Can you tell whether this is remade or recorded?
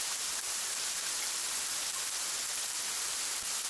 recorded